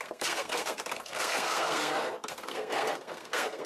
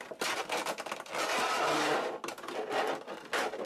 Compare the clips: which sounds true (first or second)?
second